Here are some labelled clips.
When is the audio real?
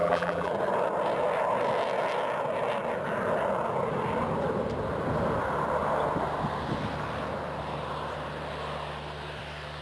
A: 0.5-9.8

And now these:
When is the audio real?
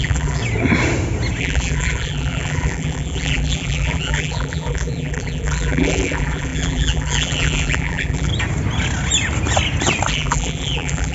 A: 0.4-1.4; 8.3-10.1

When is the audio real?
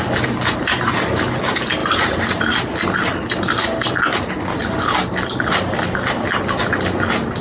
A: 0.0-1.8; 2.4-7.4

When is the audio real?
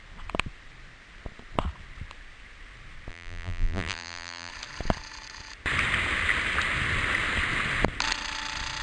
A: 0.0-3.1; 4.5-8.8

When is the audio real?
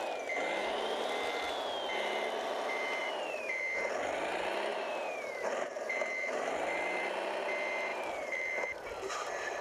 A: 0.0-0.6; 1.2-3.0; 3.6-4.7; 6.5-7.9; 9.1-9.6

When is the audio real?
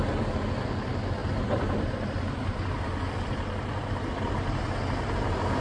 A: 0.0-1.2; 4.6-5.6